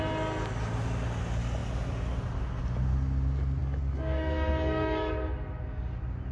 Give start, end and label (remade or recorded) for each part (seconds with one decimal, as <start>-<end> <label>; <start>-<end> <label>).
0.0-3.6 recorded; 3.6-5.1 remade; 5.1-6.3 recorded